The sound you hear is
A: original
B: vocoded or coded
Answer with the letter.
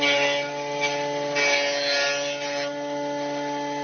A